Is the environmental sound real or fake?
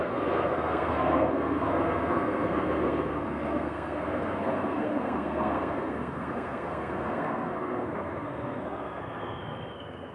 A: fake